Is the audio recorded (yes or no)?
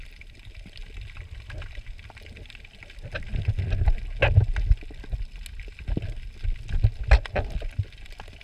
yes